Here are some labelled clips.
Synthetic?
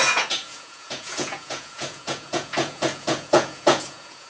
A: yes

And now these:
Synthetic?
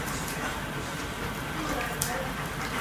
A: yes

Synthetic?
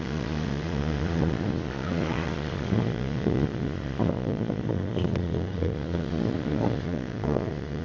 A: yes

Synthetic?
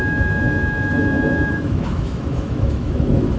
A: yes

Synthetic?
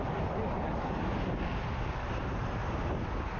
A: no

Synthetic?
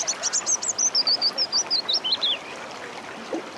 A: no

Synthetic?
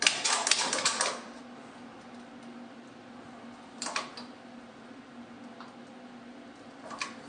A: yes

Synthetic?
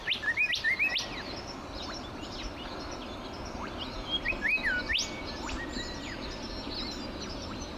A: no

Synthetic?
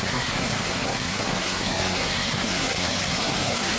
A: yes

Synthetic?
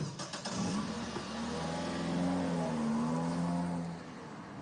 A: no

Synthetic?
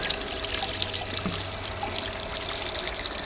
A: no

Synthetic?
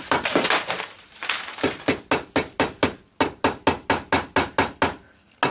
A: no